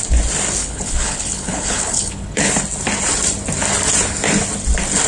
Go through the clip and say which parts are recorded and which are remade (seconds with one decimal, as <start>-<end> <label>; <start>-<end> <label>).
0.0-0.6 recorded; 0.6-2.5 remade; 2.5-5.1 recorded